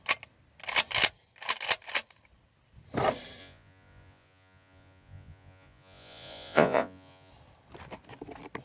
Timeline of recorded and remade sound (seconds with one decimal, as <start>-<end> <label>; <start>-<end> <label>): 0.0-3.4 recorded; 3.4-7.3 remade; 7.3-8.6 recorded